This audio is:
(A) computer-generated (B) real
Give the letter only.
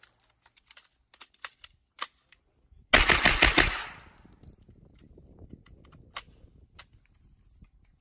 B